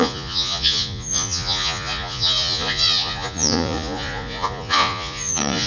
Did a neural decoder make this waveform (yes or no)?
yes